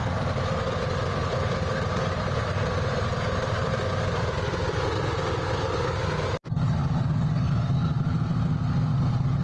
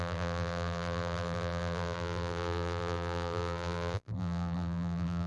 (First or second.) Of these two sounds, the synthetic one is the second